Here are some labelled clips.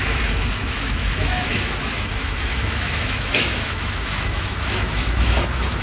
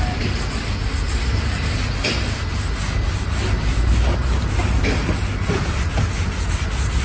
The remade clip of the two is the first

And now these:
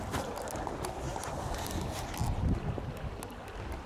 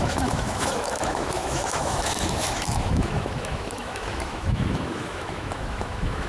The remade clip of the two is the second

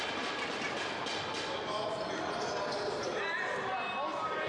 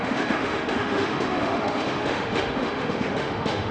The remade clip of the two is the second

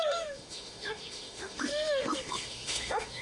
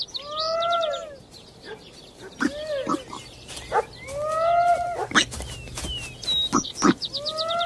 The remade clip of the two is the first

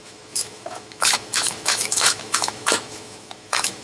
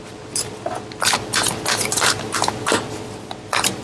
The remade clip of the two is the first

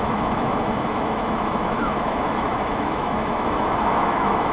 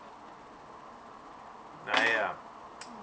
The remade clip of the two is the first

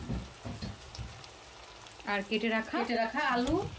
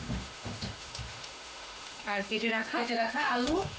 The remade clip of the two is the second